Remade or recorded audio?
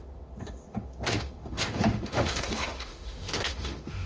remade